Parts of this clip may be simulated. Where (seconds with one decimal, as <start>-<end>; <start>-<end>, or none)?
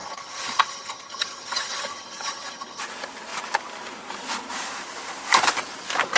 0.0-2.8